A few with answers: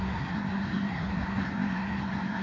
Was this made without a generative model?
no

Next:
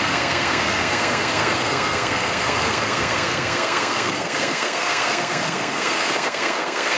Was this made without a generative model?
no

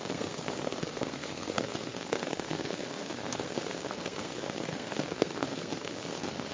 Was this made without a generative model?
no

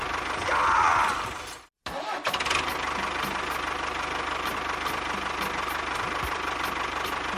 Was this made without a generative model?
yes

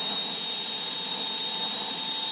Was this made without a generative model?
yes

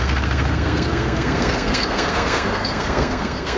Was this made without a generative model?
no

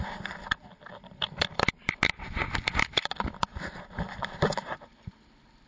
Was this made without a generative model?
yes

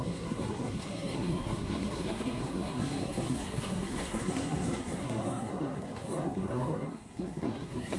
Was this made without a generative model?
no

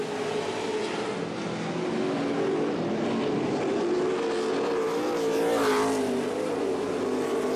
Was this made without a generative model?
yes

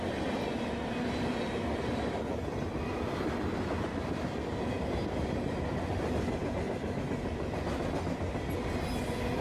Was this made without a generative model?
yes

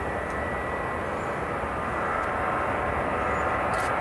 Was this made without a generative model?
yes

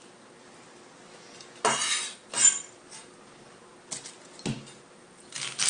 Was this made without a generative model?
yes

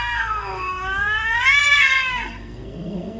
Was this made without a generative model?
no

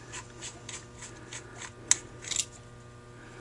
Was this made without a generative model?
yes